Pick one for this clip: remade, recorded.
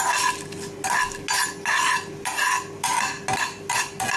recorded